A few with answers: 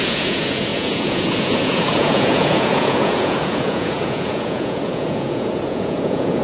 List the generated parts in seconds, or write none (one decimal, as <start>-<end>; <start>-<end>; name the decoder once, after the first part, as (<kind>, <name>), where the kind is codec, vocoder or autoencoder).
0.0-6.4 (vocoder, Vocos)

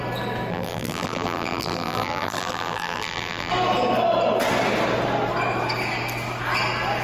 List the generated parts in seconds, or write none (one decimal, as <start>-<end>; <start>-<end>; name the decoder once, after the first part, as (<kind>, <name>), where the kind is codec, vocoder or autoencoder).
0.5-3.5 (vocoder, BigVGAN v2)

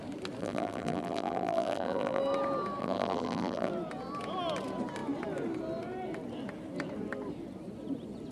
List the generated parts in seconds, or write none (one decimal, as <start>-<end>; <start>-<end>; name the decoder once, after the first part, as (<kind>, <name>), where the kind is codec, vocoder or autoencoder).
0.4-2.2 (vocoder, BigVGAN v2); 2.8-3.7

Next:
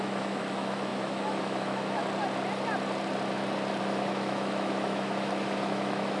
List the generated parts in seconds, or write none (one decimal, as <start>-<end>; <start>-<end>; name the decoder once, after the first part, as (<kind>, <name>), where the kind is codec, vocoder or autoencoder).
0.0-2.0 (autoencoder, DAC-VAE); 3.8-6.2

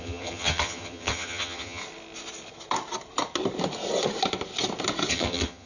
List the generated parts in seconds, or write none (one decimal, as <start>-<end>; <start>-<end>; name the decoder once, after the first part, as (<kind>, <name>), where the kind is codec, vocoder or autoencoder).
0.0-1.8 (vocoder, HiFi-GAN); 5.1-5.7

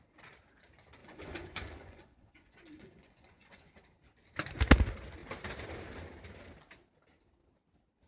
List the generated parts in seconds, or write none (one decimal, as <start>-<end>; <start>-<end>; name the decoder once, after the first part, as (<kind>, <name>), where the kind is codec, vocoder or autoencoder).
1.0-3.7 (vocoder, Vocos)